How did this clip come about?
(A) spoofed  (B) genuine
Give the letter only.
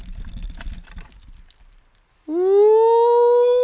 B